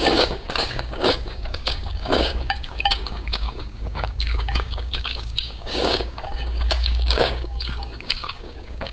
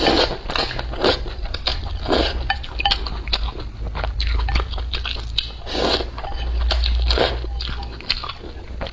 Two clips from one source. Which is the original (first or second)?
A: second